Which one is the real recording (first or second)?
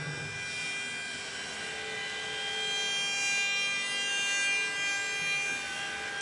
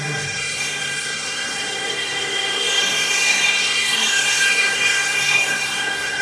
first